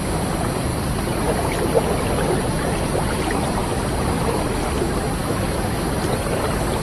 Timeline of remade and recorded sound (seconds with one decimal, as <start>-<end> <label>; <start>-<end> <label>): 0.0-5.2 recorded; 5.2-5.9 remade; 5.9-6.8 recorded